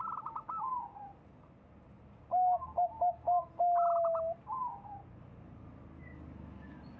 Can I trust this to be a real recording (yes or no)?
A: yes